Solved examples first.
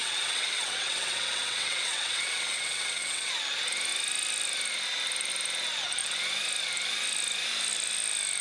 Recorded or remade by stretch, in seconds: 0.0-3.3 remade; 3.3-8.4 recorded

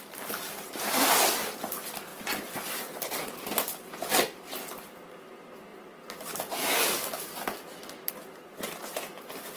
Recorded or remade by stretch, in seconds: 0.0-9.6 recorded

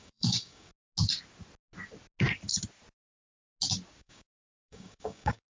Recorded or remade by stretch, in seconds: 0.0-0.7 remade; 0.7-4.0 recorded; 4.0-5.5 remade

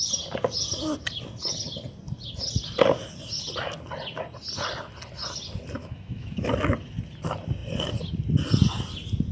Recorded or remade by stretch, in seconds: 0.0-5.8 recorded; 5.8-6.5 remade; 6.5-9.3 recorded

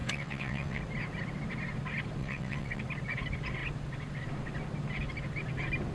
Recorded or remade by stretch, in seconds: 0.0-0.8 remade; 0.8-2.2 recorded; 2.2-2.8 remade; 2.8-5.9 recorded

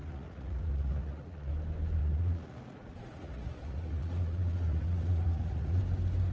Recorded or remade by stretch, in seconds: 0.0-1.5 remade; 1.5-2.0 recorded; 2.0-5.8 remade; 5.8-6.3 recorded